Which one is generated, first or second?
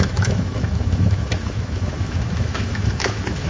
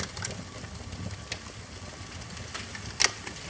first